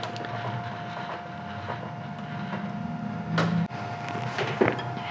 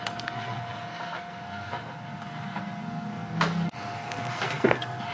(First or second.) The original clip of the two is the first